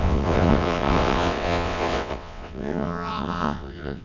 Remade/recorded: remade